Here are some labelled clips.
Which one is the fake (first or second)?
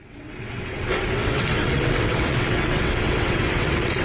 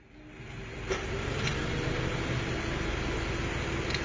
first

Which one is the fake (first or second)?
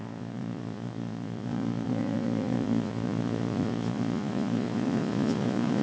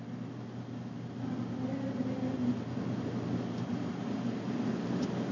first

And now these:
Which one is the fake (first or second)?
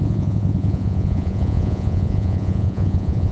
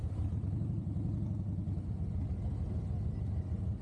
first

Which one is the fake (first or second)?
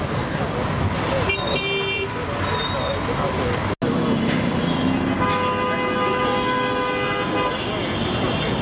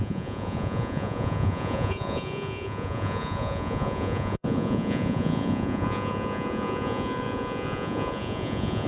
second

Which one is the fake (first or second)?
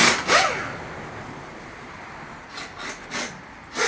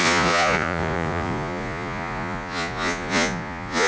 second